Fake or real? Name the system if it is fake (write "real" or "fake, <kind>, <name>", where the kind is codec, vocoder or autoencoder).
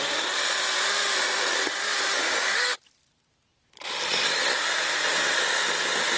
real